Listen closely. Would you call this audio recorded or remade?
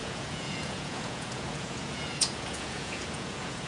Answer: remade